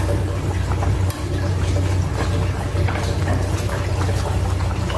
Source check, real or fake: real